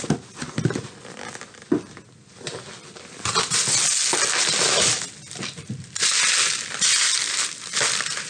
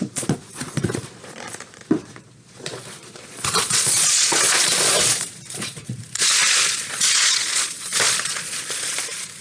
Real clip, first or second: first